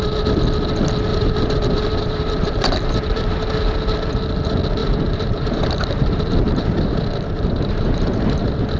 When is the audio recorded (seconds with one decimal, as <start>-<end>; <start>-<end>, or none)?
0.0-1.1; 3.3-4.8